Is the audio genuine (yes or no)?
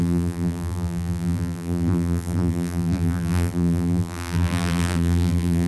no